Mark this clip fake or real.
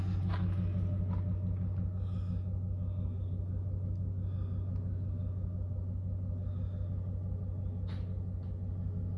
real